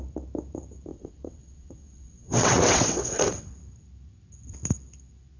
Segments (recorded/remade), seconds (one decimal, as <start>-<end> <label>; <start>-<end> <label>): 0.0-0.9 recorded; 0.9-3.5 remade; 3.5-5.4 recorded